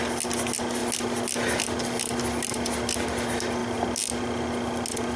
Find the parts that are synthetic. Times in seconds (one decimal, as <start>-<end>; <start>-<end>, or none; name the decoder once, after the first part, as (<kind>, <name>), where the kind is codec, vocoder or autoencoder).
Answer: none